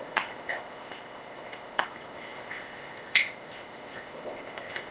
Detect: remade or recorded remade